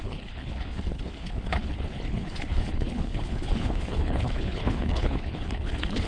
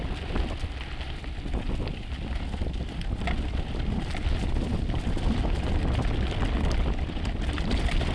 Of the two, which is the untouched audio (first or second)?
second